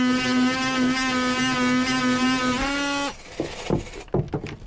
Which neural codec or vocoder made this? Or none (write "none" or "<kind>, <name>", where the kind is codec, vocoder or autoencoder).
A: none